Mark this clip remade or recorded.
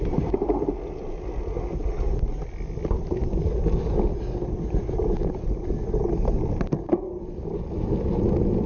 recorded